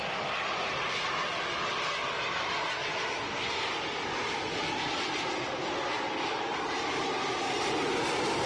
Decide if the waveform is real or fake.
real